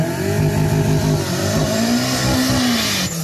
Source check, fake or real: real